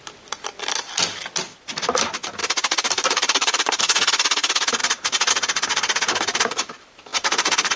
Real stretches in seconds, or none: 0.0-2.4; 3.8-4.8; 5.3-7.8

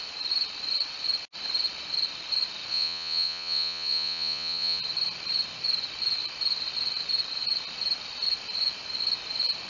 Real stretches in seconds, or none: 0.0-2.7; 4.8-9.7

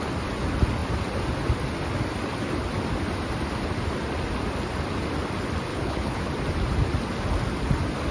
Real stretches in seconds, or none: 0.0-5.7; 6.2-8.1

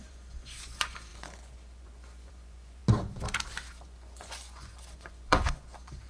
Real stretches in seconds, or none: 2.8-3.7

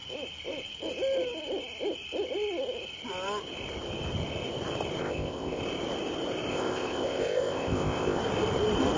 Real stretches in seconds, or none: 0.0-5.0; 5.6-6.5; 8.2-9.0